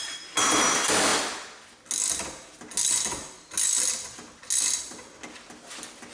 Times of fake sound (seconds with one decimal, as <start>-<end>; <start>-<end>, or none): none